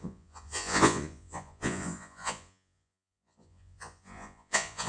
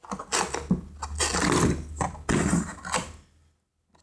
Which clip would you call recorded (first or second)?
second